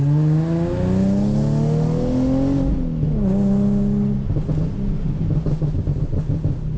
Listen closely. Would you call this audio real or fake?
real